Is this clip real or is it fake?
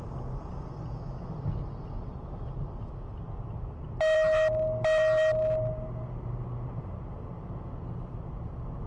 real